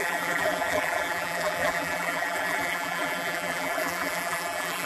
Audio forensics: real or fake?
fake